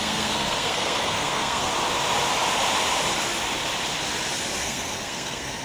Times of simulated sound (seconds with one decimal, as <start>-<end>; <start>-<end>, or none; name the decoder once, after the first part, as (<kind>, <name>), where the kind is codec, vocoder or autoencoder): 0.0-1.7 (codec, SNAC); 4.6-5.6

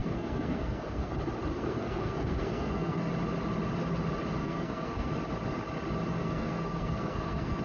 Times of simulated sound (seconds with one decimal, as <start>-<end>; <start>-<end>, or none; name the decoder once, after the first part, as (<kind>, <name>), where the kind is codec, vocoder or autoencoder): 0.0-1.1 (codec, SNAC); 1.5-3.1; 4.4-5.1; 6.2-7.6

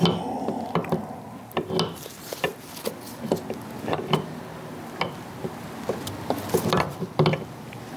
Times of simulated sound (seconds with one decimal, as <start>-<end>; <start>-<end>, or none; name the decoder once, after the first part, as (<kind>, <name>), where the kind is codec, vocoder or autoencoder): none

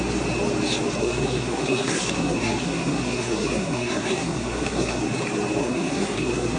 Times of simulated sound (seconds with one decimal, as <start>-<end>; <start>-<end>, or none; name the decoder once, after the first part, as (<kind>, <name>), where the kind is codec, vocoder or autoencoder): 1.0-5.0 (codec, SNAC); 5.6-6.6

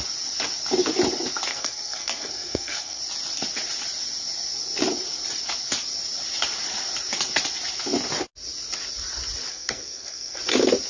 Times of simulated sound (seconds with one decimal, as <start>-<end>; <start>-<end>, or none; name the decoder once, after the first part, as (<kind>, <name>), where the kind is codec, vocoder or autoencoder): 1.5-3.0 (codec, SNAC); 9.5-10.4

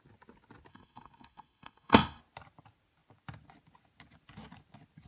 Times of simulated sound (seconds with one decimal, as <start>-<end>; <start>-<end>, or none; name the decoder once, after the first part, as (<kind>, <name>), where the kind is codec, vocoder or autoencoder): 0.7-2.2 (codec, SNAC)